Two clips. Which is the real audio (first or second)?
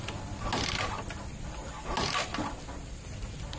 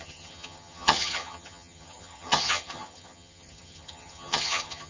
first